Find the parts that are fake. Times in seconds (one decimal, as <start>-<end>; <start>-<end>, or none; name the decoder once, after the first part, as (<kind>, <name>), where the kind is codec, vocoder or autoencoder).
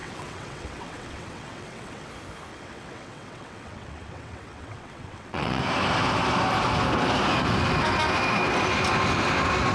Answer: 0.0-2.1 (vocoder, WaveNeXt); 2.5-5.6